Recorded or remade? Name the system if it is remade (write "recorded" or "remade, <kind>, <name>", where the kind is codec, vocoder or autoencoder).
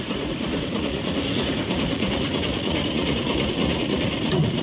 remade, vocoder, Vocos